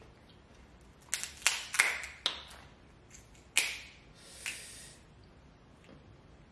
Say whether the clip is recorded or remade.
recorded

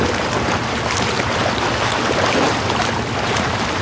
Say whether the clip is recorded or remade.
recorded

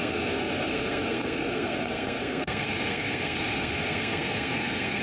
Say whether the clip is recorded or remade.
remade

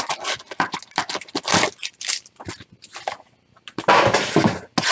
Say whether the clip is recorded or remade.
recorded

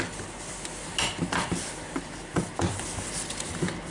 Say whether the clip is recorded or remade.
recorded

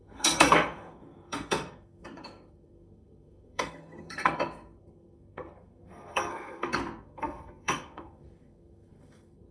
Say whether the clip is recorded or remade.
remade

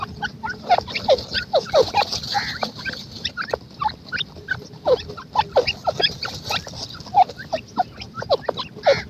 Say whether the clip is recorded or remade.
recorded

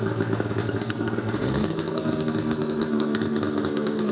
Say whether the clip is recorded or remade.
remade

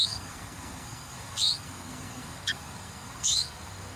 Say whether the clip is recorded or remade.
remade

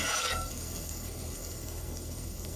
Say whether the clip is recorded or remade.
remade